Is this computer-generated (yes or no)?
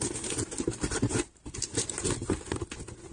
no